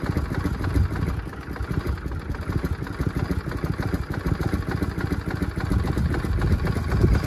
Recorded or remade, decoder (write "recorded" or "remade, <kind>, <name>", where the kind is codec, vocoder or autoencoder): recorded